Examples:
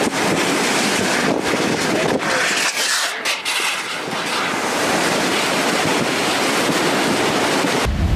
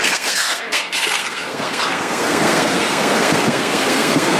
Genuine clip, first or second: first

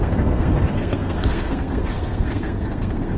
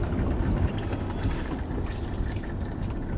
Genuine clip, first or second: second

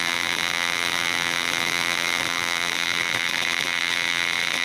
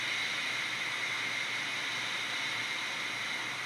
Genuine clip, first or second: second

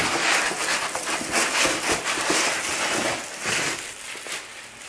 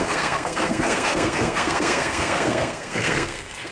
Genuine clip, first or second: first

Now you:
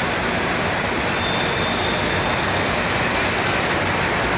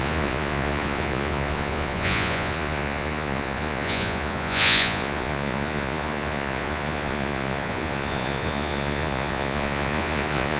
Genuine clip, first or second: first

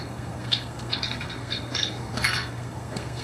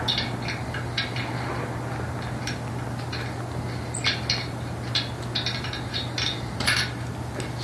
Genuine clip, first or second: second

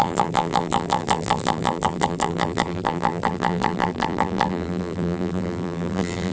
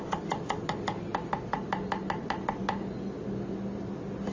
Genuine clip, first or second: second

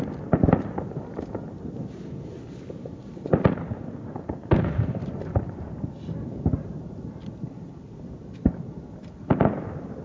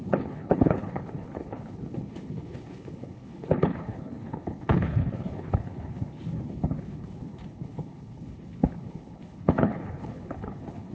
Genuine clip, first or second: first